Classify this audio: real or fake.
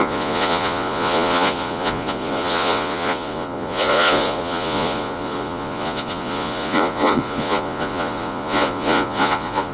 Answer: fake